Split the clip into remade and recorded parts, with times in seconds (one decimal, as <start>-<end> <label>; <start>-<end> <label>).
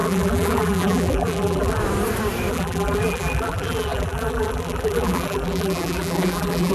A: 0.0-1.8 remade; 1.8-2.5 recorded; 2.5-6.7 remade